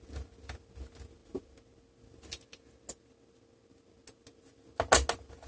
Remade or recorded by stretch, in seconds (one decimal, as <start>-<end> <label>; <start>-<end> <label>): 0.0-5.5 recorded